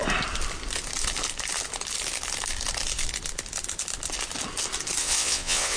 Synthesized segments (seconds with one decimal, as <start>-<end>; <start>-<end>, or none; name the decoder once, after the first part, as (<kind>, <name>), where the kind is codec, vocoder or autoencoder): 5.0-5.8 (vocoder, WaveNeXt)